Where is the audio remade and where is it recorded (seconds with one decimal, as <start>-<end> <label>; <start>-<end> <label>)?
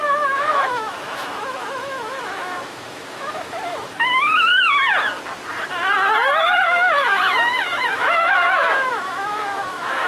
0.0-4.5 remade; 4.5-6.4 recorded; 6.4-10.1 remade